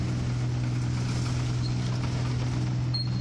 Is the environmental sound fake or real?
real